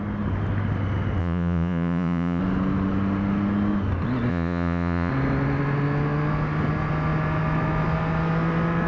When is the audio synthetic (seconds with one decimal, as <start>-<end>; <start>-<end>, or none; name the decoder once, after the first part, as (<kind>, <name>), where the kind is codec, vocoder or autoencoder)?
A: 1.2-2.4 (vocoder, Vocos); 4.3-5.1